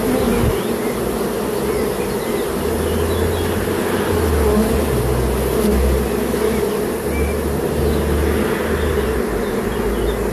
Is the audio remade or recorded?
recorded